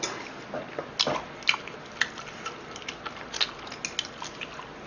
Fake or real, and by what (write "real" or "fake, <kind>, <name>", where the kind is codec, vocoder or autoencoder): real